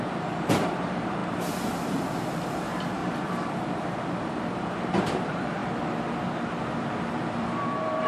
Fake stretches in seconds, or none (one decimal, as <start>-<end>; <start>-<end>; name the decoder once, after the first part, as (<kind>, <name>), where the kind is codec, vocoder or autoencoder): 0.0-3.0 (vocoder, BigVGAN v2); 4.3-5.6; 6.8-8.1